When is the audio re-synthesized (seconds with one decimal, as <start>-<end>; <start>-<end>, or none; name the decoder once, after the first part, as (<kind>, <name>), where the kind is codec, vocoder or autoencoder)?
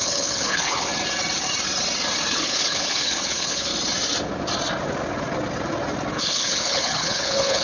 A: 0.0-0.9 (codec, HILCodec); 2.3-3.7; 6.1-7.6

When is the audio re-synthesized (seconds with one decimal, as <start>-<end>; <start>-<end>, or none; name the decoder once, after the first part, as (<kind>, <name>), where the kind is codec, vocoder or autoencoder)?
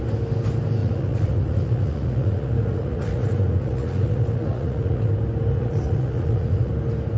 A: 0.8-5.1 (vocoder, Vocos); 5.5-6.7